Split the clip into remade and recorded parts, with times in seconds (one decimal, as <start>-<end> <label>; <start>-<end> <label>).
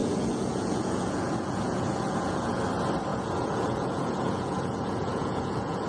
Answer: 0.0-2.6 remade; 2.6-3.1 recorded; 3.1-5.9 remade